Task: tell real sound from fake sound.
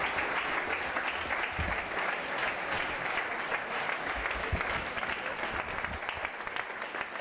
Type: real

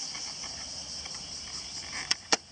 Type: real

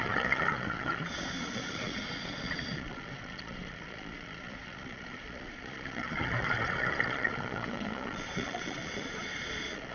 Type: fake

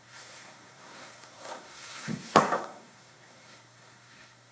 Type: fake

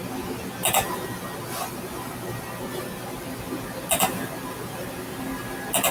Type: real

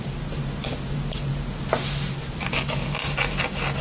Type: real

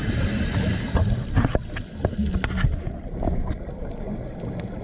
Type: real